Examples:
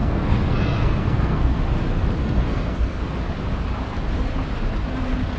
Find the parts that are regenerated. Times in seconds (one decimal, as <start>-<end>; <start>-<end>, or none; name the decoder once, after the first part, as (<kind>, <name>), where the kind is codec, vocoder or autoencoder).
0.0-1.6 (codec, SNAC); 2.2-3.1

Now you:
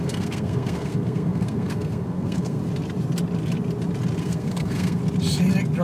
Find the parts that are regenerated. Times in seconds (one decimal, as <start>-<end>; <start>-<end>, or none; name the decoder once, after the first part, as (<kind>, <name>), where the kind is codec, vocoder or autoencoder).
0.0-2.6 (codec, SNAC); 4.2-5.0

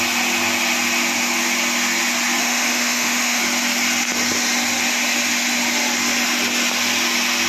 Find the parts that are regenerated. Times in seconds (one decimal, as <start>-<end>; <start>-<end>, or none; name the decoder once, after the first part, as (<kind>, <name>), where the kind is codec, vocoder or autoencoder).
2.4-3.4 (autoencoder, DAC-VAE)

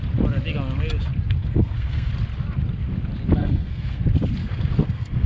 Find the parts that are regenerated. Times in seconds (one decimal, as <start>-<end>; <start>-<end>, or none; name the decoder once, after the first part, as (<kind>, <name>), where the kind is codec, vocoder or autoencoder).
1.4-2.1 (codec, SNAC); 3.4-4.0; 4.4-5.3

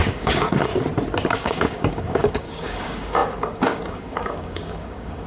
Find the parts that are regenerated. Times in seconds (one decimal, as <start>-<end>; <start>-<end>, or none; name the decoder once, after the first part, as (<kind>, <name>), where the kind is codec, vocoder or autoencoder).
0.0-0.7 (codec, DAC); 1.3-5.3

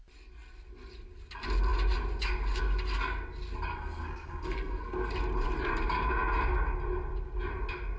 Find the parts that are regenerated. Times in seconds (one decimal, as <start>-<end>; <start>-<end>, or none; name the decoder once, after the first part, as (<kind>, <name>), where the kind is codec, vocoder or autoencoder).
3.7-5.1 (codec, SNAC)

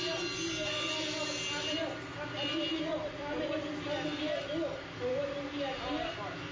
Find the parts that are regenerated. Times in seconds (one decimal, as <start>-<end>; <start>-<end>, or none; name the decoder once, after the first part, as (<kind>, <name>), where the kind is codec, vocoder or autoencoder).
none

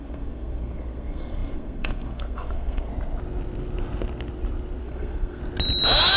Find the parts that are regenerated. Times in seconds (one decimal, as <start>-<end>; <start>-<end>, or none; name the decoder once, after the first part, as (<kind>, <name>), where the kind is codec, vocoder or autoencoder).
0.0-2.9 (codec, SNAC); 4.8-5.4